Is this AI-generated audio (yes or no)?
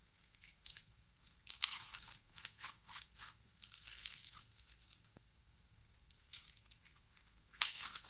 yes